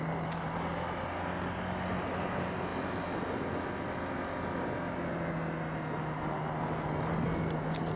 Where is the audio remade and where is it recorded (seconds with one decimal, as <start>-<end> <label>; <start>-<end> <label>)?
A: 0.0-8.0 recorded